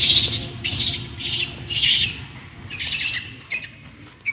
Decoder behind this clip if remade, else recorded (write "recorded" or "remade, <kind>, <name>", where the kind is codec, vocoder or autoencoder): recorded